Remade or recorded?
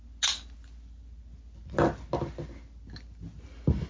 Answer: recorded